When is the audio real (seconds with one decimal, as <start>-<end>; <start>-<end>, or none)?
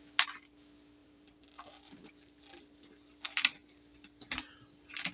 0.0-1.0; 2.1-5.1